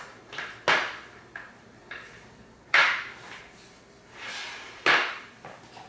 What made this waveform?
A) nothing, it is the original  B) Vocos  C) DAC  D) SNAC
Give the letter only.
A